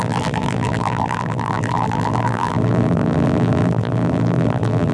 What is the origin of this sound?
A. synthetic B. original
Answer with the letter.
A